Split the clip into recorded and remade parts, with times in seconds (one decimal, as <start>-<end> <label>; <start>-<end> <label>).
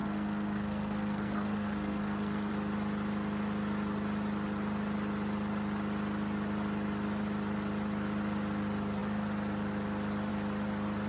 0.0-2.5 remade; 2.5-11.1 recorded